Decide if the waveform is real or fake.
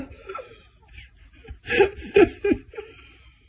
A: real